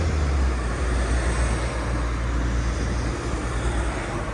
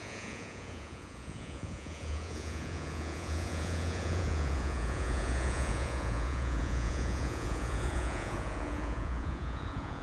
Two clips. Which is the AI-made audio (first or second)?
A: second